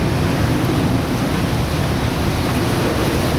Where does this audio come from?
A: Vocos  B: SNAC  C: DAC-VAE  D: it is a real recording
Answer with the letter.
D